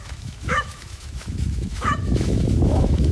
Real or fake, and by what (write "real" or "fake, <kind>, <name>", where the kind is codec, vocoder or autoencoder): fake, autoencoder, DAC-VAE